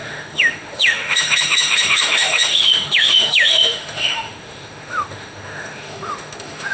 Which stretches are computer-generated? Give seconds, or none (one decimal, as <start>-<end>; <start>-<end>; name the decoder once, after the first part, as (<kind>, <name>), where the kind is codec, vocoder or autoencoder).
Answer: 0.0-6.7 (autoencoder, DAC-VAE)